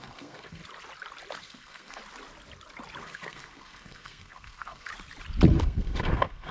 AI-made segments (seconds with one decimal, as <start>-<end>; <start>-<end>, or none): 0.0-0.6; 1.4-2.0; 3.0-4.9; 5.6-6.5